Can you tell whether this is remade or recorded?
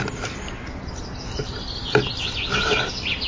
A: recorded